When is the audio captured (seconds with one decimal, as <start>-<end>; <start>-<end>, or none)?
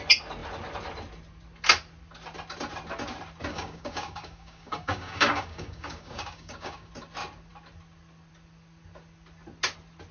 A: 0.0-3.5; 6.9-10.1